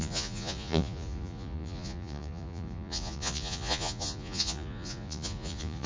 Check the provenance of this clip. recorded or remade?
remade